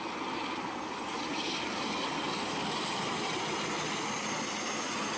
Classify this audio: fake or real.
real